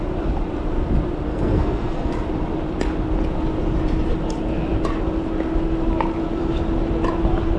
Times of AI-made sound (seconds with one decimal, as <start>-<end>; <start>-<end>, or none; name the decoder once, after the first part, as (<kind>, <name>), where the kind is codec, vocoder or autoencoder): 1.3-2.1 (codec, SNAC)